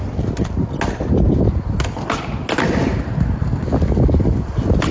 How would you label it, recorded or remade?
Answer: recorded